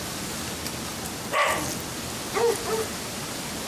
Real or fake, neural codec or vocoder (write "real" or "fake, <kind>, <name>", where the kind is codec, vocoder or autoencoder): real